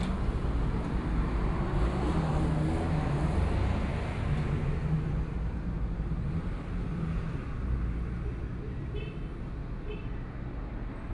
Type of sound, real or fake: real